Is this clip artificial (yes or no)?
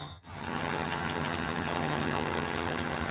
yes